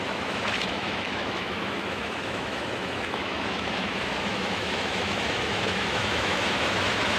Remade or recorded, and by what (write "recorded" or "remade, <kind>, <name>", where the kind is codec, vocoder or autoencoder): remade, autoencoder, DAC-VAE